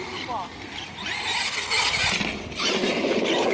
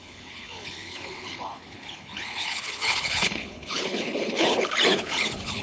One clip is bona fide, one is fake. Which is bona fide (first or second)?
first